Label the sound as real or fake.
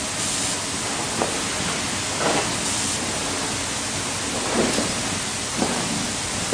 real